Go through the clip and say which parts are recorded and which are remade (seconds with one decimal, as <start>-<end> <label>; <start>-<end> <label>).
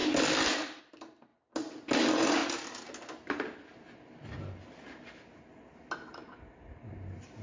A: 0.0-2.4 recorded; 2.4-2.9 remade; 2.9-7.4 recorded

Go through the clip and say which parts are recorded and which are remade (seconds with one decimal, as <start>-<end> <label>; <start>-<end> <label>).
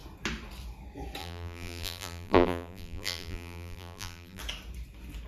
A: 0.0-1.2 recorded; 1.2-4.4 remade; 4.4-5.3 recorded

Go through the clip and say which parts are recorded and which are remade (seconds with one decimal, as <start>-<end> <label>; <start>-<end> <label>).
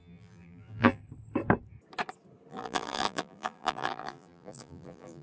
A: 0.0-1.0 remade; 1.0-2.5 recorded; 2.5-5.2 remade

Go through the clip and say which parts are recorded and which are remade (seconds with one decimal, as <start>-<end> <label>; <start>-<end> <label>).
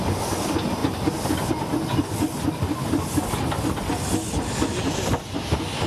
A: 0.0-0.8 recorded; 0.8-1.5 remade; 1.5-5.9 recorded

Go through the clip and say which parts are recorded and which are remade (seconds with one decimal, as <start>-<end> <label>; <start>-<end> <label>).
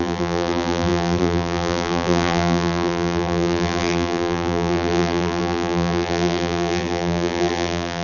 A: 0.0-8.0 remade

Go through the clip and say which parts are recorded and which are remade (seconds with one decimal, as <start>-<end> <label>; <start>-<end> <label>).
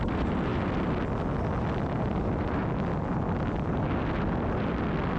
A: 0.0-0.5 remade; 0.5-1.6 recorded; 1.6-2.6 remade; 2.6-5.2 recorded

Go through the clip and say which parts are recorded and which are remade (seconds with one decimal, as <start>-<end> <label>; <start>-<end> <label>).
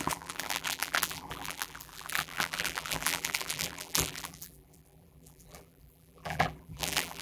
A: 0.0-7.2 remade